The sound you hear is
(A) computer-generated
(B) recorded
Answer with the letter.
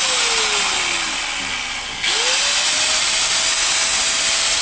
B